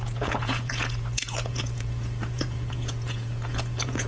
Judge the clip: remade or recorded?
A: remade